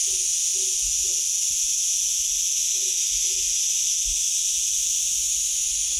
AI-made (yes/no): no